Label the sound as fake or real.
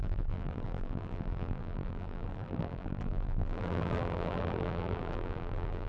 fake